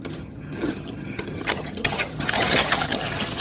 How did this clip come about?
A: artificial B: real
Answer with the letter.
A